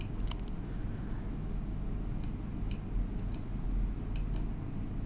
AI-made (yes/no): no